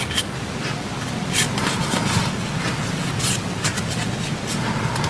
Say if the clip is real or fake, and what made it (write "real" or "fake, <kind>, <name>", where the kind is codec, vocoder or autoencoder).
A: real